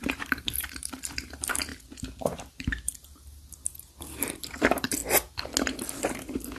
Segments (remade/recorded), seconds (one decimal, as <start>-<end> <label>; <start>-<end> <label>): 0.0-1.7 remade; 1.7-2.2 recorded; 2.2-5.0 remade; 5.0-6.1 recorded; 6.1-6.6 remade